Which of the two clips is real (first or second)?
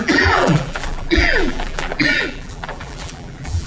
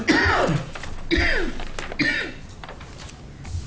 second